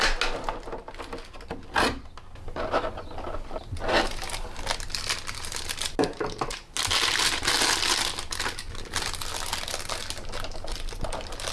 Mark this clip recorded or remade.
recorded